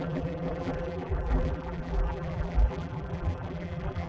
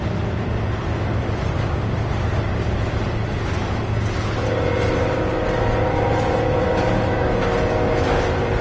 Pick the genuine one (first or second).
second